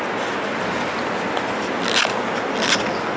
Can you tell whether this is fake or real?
real